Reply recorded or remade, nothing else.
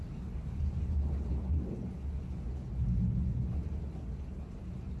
recorded